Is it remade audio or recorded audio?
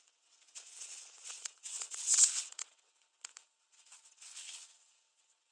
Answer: remade